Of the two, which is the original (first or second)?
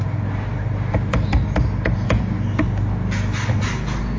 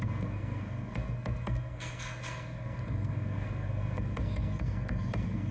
first